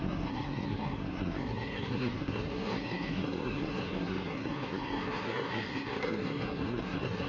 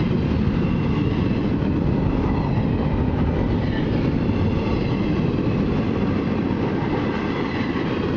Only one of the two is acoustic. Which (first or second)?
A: second